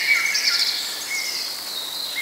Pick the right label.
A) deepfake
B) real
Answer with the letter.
B